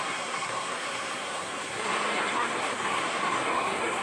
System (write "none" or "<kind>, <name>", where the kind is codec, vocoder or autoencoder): codec, SNAC